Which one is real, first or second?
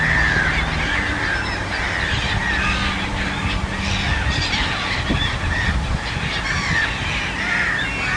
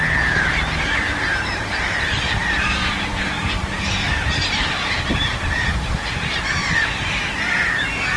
first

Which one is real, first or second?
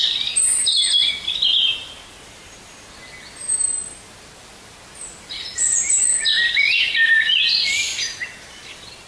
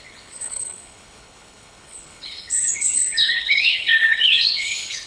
first